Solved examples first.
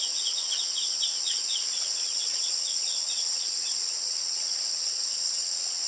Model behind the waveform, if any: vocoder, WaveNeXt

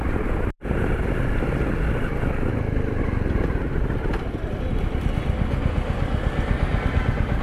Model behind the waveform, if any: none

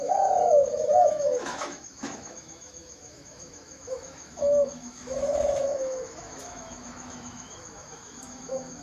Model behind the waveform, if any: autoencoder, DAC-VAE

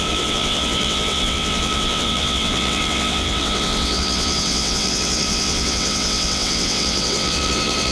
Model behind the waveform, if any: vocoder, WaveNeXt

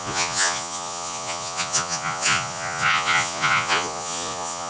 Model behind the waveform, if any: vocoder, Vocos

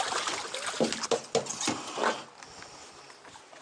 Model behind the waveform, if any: none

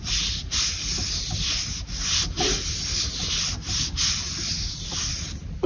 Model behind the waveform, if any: none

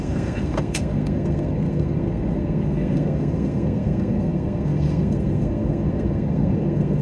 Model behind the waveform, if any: codec, SNAC